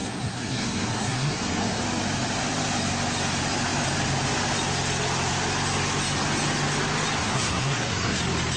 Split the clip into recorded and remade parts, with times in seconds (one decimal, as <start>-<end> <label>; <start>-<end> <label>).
0.0-1.8 remade; 1.8-7.2 recorded; 7.2-8.2 remade; 8.2-8.6 recorded